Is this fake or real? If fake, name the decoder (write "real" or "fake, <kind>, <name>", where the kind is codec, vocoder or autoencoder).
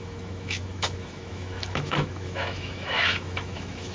fake, autoencoder, DAC-VAE